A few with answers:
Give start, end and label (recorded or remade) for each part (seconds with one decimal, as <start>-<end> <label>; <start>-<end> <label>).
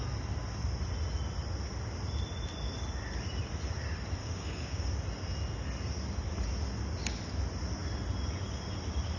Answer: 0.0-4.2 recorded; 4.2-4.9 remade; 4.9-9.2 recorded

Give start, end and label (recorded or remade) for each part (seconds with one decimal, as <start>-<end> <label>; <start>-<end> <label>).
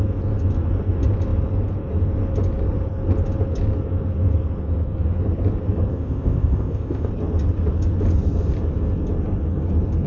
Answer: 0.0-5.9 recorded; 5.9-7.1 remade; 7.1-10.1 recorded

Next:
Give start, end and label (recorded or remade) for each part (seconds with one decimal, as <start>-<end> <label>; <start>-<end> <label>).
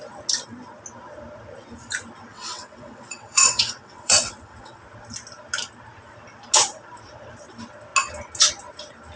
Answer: 0.0-2.3 recorded; 2.3-4.8 remade; 4.8-9.2 recorded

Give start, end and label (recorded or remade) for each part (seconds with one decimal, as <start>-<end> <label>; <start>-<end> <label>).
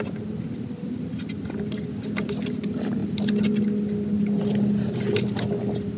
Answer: 0.0-6.0 recorded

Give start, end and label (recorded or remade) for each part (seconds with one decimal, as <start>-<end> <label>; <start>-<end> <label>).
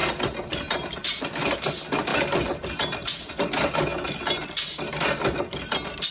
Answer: 0.0-6.1 recorded